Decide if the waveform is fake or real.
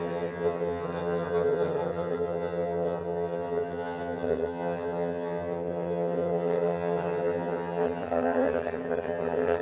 fake